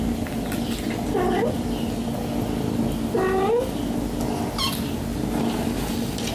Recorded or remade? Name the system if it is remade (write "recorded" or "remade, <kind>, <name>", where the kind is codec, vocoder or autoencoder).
recorded